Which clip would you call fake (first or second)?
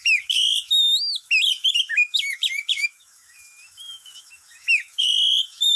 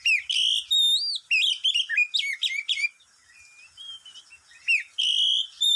first